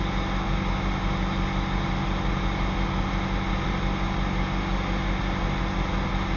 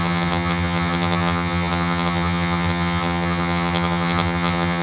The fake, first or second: second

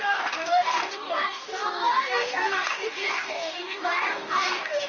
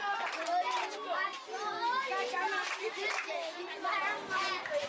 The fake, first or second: first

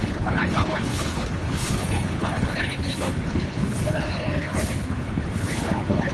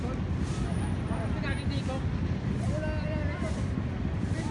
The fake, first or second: first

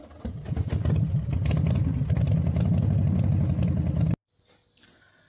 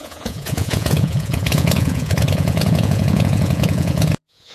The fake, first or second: second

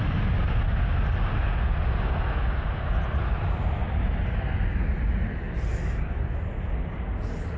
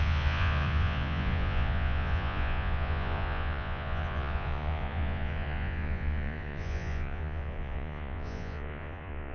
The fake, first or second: second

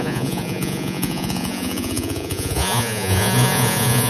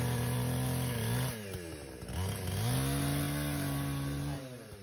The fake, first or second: first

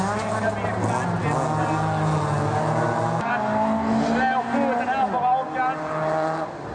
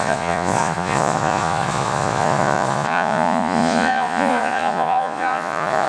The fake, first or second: second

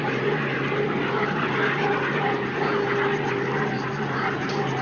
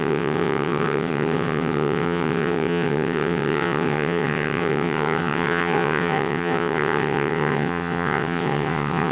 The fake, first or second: second